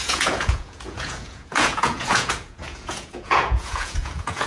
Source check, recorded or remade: remade